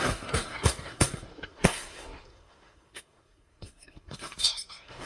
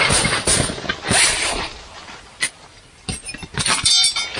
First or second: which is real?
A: second